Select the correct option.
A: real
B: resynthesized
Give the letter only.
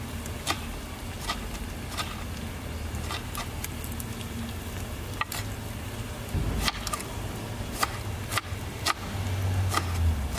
A